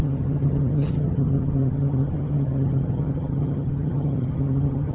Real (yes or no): no